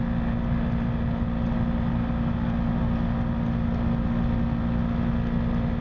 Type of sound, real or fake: real